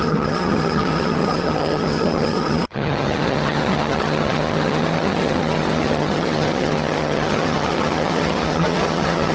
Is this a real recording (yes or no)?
no